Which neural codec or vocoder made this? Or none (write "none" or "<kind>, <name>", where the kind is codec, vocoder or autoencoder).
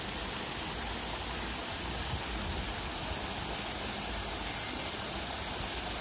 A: none